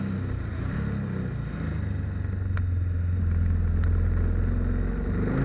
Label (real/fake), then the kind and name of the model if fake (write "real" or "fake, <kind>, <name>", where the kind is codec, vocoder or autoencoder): real